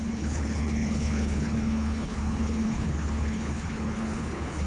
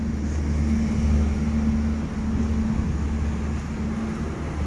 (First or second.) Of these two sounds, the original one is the second